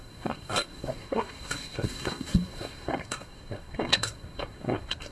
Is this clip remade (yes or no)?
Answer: yes